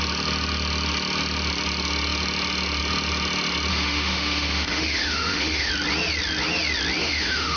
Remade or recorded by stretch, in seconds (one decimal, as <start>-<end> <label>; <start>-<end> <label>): 0.0-3.7 recorded; 3.7-5.7 remade; 5.7-7.0 recorded; 7.0-7.6 remade

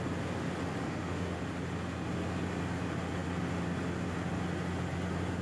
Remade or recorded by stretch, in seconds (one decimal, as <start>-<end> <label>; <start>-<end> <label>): 0.0-0.8 recorded; 0.8-1.4 remade; 1.4-5.4 recorded